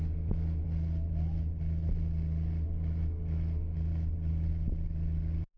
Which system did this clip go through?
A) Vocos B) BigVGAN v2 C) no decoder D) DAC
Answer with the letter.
C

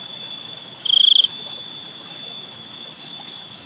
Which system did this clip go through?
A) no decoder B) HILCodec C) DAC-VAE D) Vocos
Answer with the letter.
C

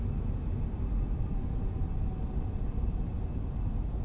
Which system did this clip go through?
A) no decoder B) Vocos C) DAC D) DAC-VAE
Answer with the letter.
A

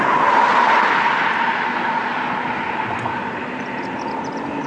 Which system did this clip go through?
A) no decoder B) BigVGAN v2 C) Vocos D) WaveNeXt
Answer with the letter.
A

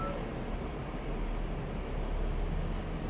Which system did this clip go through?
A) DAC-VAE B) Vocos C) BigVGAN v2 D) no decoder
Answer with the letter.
D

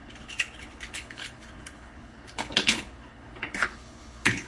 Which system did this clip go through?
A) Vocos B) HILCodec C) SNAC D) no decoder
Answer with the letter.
B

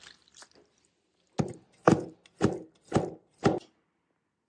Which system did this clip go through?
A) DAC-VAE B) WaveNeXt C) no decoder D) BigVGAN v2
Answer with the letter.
C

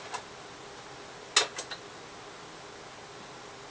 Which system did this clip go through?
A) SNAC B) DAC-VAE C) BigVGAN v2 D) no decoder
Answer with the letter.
D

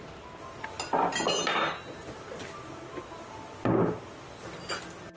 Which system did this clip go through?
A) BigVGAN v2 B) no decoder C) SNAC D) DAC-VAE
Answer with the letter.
B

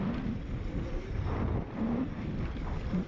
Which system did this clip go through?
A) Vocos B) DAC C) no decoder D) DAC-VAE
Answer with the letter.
C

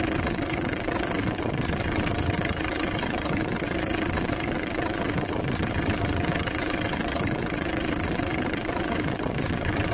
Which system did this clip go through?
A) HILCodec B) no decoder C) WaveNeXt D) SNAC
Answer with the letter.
C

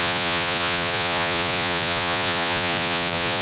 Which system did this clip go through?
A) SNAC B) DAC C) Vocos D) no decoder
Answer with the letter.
C